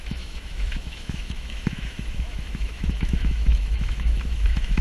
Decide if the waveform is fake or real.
fake